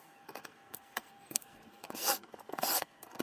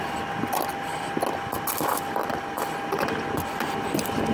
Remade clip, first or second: first